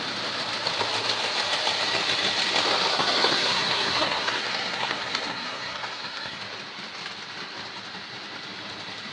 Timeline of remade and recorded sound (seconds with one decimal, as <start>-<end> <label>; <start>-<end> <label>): 0.0-2.9 recorded; 2.9-6.4 remade; 6.4-9.1 recorded